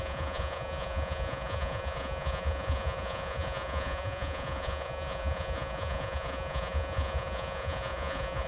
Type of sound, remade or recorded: remade